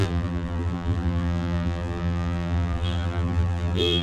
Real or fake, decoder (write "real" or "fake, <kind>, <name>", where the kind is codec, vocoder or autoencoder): fake, vocoder, BigVGAN v2